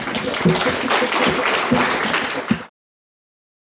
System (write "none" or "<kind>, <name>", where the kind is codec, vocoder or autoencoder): none